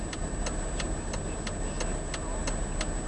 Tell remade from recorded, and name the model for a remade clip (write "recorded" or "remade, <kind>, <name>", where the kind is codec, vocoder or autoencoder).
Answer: recorded